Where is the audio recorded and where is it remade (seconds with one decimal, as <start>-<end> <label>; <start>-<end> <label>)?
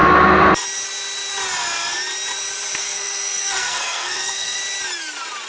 0.0-2.8 recorded; 2.8-4.6 remade; 4.6-5.5 recorded